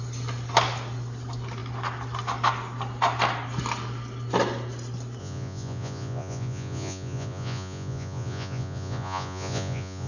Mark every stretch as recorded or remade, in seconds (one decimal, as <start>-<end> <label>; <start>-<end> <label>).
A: 0.0-5.2 recorded; 5.2-10.1 remade